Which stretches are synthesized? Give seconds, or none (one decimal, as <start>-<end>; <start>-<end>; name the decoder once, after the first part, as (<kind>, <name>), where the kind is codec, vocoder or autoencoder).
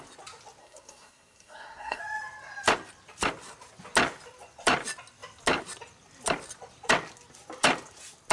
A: 0.6-2.0 (codec, SNAC)